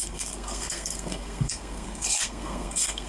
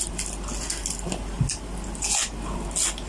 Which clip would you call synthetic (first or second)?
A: first